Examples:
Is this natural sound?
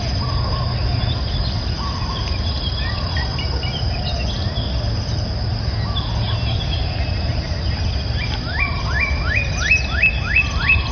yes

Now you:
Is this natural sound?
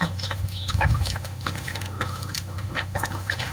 no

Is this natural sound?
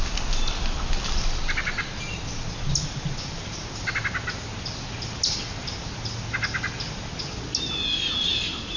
yes